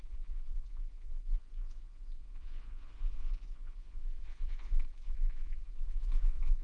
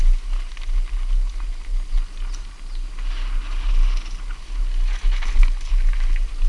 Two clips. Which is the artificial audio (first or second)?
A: first